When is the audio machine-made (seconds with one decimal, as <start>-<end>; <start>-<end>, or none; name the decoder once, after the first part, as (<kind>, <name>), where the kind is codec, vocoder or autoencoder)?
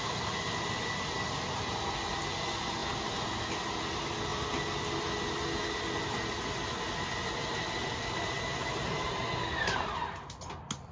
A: 2.8-3.4 (vocoder, BigVGAN v2)